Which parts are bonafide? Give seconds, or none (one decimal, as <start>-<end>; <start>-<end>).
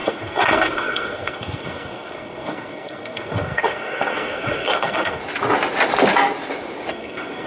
5.2-6.9